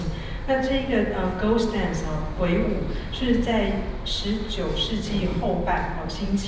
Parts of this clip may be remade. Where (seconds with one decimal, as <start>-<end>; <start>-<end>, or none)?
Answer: 5.3-6.1